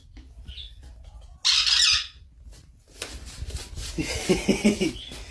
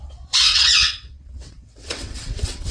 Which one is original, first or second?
first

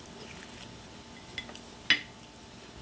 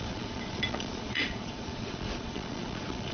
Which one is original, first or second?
first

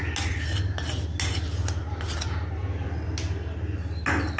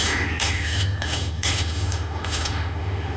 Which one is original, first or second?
first